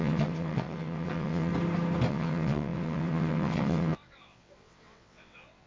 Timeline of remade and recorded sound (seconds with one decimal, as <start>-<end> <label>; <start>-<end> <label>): 0.0-1.5 remade; 1.5-2.1 recorded; 2.1-5.7 remade